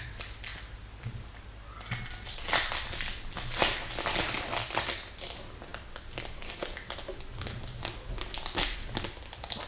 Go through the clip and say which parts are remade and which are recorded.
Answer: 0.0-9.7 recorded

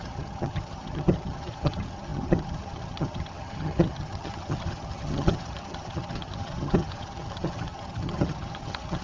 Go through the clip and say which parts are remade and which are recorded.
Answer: 0.0-9.0 remade

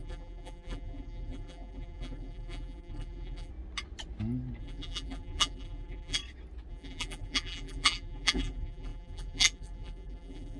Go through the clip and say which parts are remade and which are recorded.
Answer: 0.0-3.5 remade; 3.5-4.6 recorded; 4.6-6.2 remade; 6.2-6.7 recorded; 6.7-10.6 remade

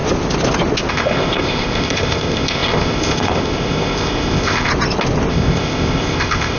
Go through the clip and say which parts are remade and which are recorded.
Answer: 0.0-0.9 recorded; 0.9-4.7 remade; 4.7-5.3 recorded; 5.3-6.6 remade

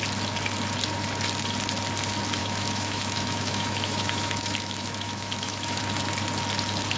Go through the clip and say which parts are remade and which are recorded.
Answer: 0.0-2.4 recorded; 2.4-5.8 remade; 5.8-7.0 recorded

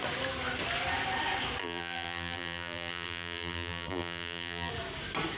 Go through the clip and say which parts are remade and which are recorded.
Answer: 0.0-1.6 recorded; 1.6-4.7 remade; 4.7-5.4 recorded

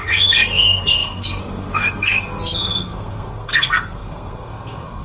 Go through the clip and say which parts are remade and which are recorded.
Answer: 0.0-5.0 remade